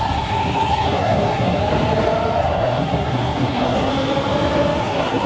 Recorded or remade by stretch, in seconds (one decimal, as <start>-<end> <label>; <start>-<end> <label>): 0.0-1.6 remade; 1.6-2.4 recorded; 2.4-3.9 remade; 3.9-4.8 recorded; 4.8-5.3 remade